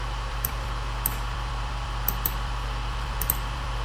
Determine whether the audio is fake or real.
fake